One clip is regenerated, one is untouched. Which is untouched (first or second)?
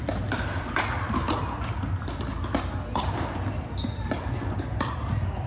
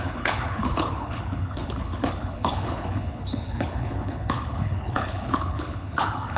first